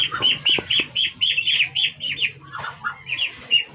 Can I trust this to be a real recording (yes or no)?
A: yes